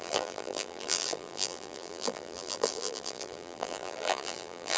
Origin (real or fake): fake